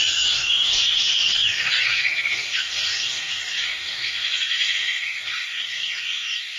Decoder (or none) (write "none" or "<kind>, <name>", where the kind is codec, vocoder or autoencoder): codec, DAC